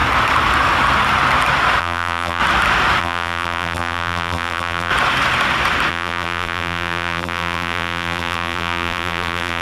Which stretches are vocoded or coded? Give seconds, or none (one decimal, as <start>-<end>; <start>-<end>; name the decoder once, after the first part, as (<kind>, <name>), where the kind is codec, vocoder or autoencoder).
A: 1.8-2.4 (vocoder, BigVGAN v2); 3.0-4.9; 5.9-9.6